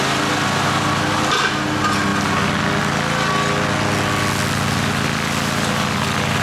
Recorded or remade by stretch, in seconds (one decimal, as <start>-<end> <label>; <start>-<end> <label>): 0.0-6.4 recorded